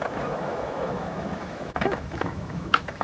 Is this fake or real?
fake